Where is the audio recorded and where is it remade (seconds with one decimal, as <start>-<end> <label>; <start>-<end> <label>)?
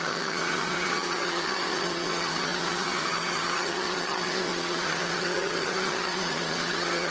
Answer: 0.0-7.1 remade